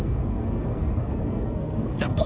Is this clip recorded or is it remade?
remade